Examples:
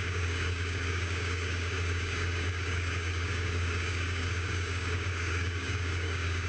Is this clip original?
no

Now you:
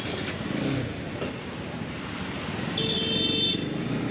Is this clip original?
yes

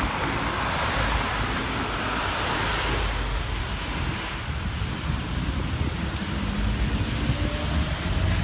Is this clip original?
yes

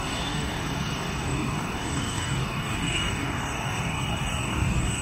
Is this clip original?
no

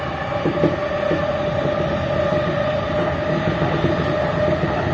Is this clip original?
yes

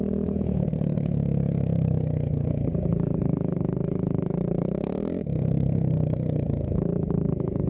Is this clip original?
no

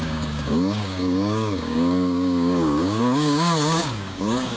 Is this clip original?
no